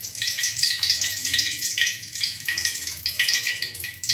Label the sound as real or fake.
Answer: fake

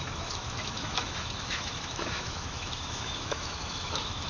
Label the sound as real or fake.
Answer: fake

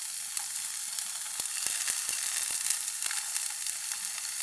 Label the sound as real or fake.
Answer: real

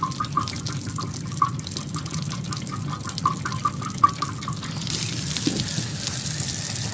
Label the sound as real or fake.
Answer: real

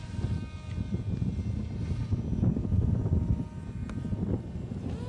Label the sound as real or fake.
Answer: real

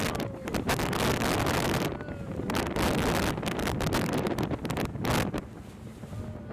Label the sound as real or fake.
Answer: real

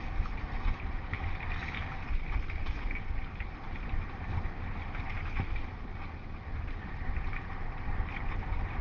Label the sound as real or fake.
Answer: real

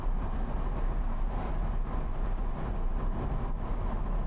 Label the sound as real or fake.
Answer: real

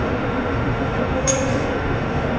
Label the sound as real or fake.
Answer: fake